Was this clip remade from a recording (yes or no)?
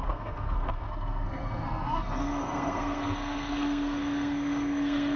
yes